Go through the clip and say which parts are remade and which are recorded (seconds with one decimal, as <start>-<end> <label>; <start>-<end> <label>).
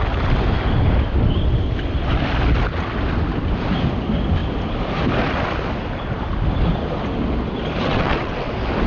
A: 0.0-7.8 recorded; 7.8-8.5 remade; 8.5-8.9 recorded